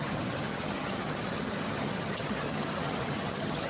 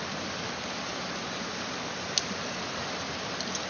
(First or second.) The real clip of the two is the second